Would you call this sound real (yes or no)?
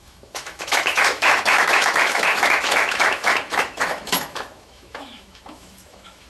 no